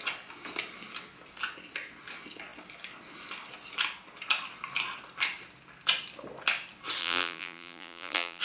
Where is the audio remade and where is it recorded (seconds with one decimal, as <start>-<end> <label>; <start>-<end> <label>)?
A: 0.0-7.0 recorded; 7.0-8.4 remade